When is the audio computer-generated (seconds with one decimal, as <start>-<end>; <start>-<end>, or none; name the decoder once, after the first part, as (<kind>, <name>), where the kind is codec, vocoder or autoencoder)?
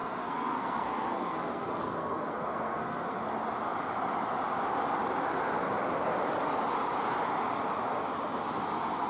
0.0-3.2 (codec, SNAC)